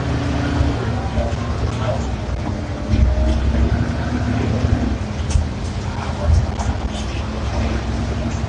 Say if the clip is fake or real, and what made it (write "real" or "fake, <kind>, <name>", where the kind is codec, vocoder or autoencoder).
real